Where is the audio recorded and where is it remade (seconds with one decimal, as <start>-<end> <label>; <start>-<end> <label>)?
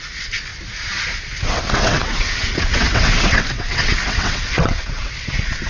0.0-0.5 remade; 0.5-1.4 recorded; 1.4-5.7 remade